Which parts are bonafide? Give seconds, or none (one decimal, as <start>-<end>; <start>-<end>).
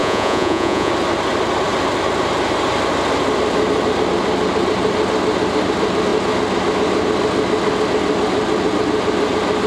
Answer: 0.9-9.7